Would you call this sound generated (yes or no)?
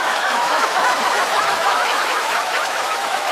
yes